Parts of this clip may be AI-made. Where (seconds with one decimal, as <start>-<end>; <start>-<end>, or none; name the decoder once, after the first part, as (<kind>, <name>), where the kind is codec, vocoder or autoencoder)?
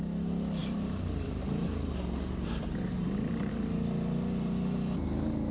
0.6-1.9 (vocoder, BigVGAN v2); 2.9-3.5